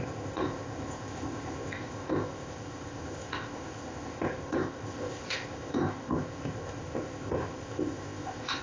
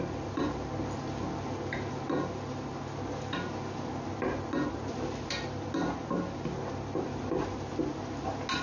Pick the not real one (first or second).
first